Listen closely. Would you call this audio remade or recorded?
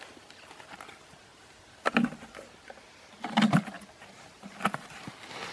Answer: recorded